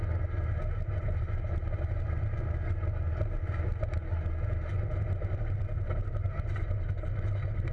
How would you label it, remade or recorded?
recorded